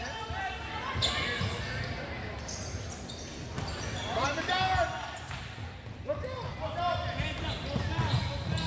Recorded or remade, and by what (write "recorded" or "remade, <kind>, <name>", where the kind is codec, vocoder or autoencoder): recorded